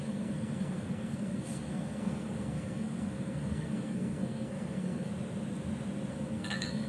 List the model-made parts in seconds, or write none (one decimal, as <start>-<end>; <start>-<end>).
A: 0.0-5.1; 6.1-6.9